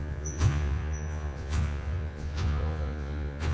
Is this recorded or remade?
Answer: remade